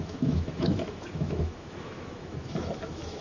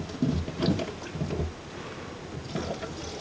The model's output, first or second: first